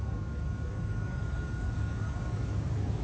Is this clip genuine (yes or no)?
no